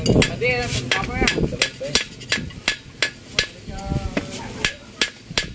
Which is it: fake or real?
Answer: real